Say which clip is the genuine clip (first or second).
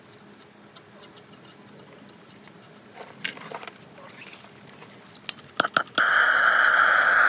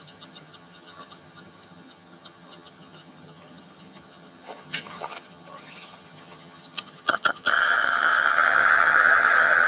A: first